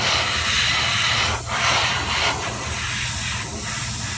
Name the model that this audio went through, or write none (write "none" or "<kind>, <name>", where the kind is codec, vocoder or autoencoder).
vocoder, BigVGAN v2